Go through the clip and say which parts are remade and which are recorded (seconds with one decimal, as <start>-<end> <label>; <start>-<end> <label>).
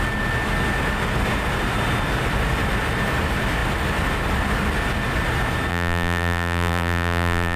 0.0-5.7 recorded; 5.7-7.6 remade